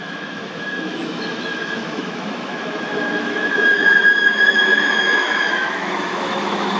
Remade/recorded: remade